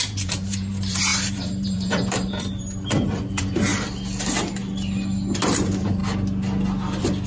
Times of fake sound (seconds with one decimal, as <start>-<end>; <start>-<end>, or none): 0.0-3.7; 5.4-6.0